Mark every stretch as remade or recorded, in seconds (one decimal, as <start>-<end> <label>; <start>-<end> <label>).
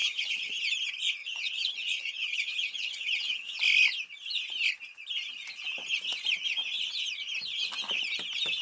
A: 0.0-0.6 remade; 0.6-1.2 recorded; 1.2-3.6 remade; 3.6-8.6 recorded